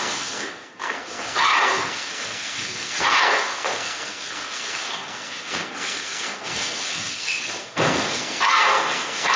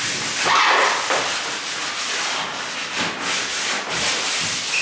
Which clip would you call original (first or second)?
second